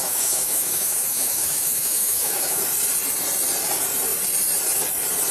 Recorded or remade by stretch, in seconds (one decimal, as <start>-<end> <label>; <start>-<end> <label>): 0.0-2.6 remade; 2.6-5.3 recorded